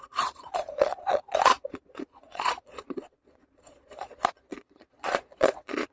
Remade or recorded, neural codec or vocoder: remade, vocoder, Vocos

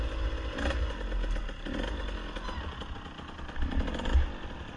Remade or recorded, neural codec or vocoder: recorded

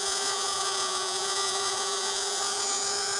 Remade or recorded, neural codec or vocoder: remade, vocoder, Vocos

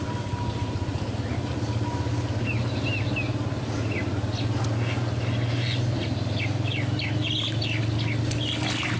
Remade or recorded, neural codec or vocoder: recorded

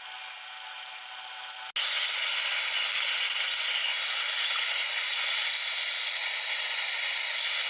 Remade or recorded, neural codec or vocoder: recorded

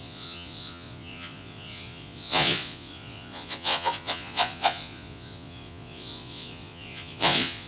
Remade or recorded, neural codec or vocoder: remade, vocoder, Vocos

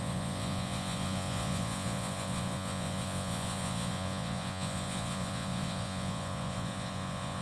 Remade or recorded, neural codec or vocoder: remade, vocoder, Vocos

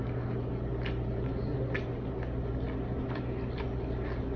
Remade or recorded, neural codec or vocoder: recorded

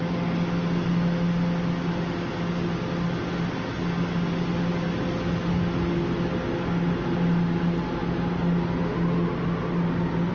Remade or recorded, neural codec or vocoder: recorded